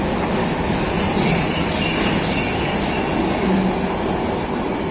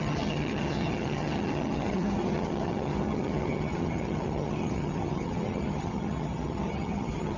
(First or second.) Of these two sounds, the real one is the first